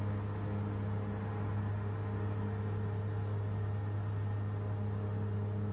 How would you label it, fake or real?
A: real